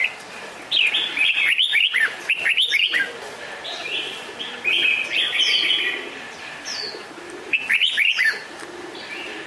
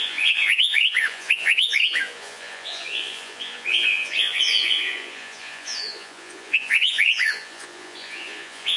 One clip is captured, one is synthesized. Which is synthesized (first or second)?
second